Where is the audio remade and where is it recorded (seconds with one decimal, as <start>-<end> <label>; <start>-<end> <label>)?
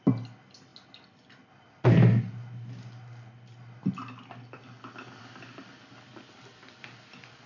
0.0-7.5 recorded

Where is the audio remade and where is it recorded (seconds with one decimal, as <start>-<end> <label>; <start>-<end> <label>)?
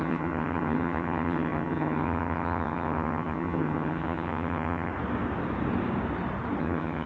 0.0-4.9 remade; 4.9-6.6 recorded; 6.6-7.1 remade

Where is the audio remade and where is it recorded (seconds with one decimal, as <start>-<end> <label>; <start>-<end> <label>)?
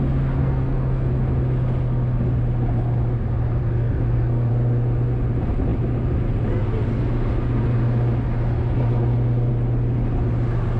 0.0-0.4 recorded; 0.4-1.1 remade; 1.1-3.6 recorded; 3.6-4.5 remade; 4.5-10.8 recorded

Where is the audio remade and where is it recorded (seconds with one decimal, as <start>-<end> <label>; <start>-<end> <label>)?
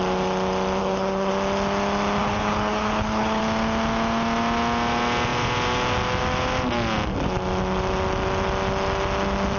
0.0-0.8 recorded; 0.8-1.3 remade; 1.3-2.2 recorded; 2.2-3.4 remade; 3.4-9.6 recorded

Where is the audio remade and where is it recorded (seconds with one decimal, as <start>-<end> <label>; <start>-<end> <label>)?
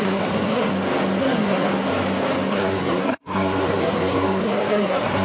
0.0-0.7 remade; 0.7-1.2 recorded; 1.2-1.7 remade; 1.7-2.5 recorded; 2.5-5.2 remade